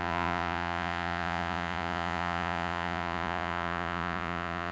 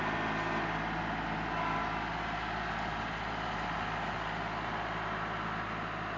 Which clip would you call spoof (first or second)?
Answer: first